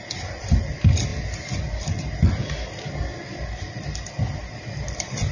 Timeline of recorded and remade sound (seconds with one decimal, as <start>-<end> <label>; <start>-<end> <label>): 0.0-5.3 recorded